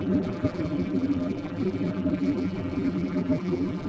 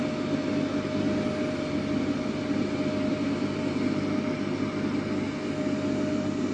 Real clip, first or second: second